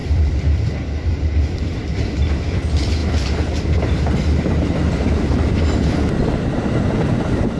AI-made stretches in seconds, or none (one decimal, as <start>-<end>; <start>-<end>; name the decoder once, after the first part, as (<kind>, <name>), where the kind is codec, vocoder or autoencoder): 0.0-7.6 (vocoder, BigVGAN v2)